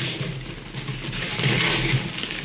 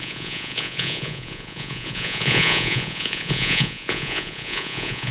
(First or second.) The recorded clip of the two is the first